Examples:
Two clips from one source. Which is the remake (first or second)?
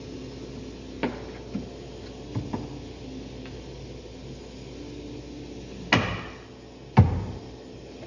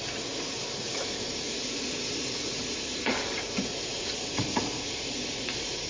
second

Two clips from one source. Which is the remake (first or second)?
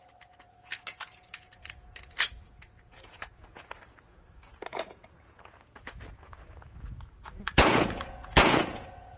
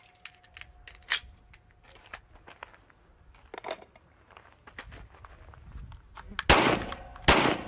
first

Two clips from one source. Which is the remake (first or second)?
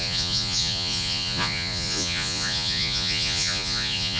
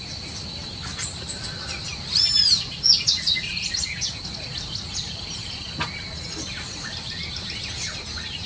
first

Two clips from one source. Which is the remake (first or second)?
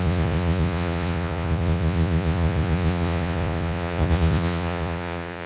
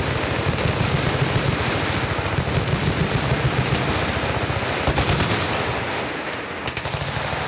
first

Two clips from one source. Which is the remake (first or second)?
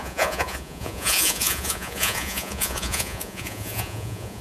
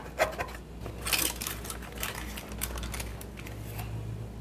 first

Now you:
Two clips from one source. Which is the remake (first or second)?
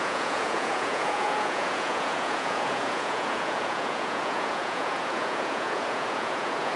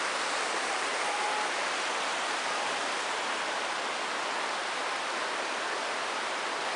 first